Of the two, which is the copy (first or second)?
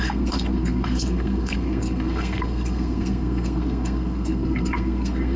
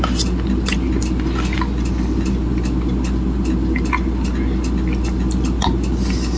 first